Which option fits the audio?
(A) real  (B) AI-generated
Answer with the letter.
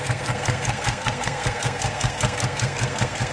B